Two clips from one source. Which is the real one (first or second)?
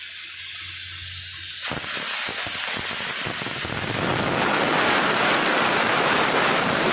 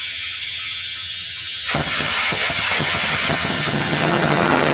first